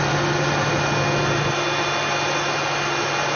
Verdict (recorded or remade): recorded